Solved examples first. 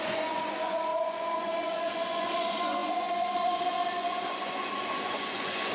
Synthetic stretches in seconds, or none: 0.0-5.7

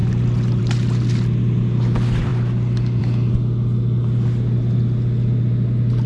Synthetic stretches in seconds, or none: none

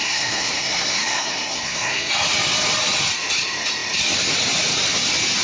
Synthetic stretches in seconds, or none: 0.0-2.1

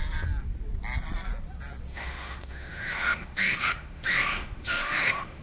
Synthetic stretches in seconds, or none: 1.9-5.4

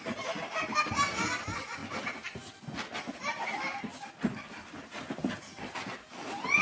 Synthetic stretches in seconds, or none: none

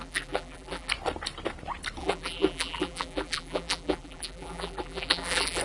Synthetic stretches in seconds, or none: 0.0-0.9; 2.0-5.6

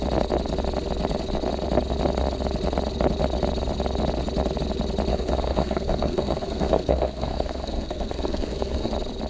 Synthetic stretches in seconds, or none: 5.1-8.9

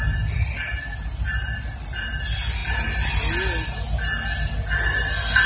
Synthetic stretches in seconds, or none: none